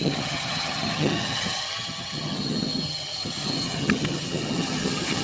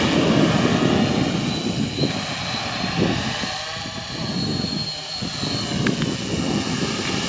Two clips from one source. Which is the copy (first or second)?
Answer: first